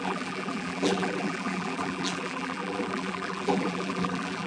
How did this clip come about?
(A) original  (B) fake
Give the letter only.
B